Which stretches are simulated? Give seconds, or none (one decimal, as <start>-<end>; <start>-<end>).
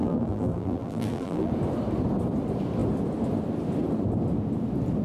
0.0-1.5